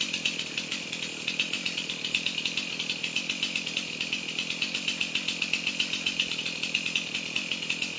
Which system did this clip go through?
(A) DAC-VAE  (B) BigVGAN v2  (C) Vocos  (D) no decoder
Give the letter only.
D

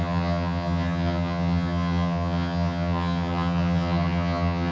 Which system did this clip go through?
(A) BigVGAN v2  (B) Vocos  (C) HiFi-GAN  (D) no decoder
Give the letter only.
C